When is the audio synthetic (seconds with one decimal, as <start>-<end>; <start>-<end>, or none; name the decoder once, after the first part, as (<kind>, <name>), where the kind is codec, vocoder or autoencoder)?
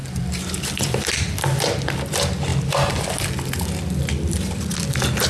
0.0-1.1 (vocoder, BigVGAN v2)